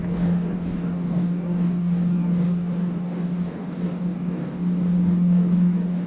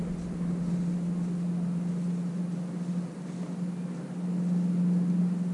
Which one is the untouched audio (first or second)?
second